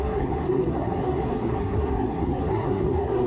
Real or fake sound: fake